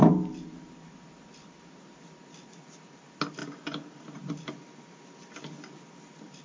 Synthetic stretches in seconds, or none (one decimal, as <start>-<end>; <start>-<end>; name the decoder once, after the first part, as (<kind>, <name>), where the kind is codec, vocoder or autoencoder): none